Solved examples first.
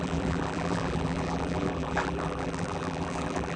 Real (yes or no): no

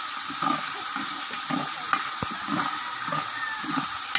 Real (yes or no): yes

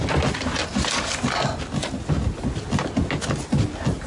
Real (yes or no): yes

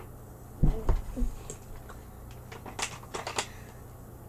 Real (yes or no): yes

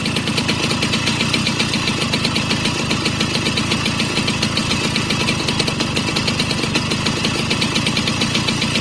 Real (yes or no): yes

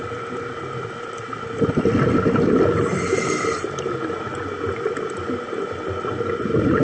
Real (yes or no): yes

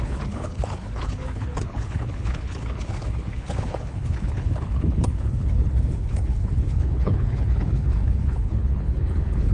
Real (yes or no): no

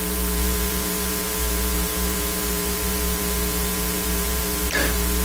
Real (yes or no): no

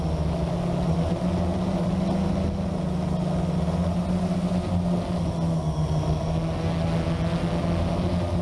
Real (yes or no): yes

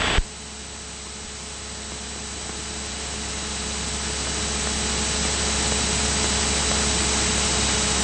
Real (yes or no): yes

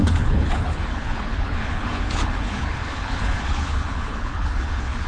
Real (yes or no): no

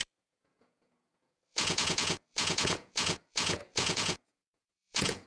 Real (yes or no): no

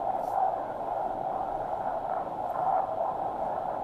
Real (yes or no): yes